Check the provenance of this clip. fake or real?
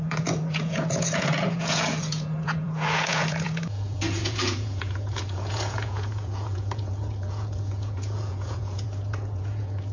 fake